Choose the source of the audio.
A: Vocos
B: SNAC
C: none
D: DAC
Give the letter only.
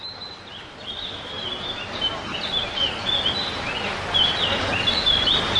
C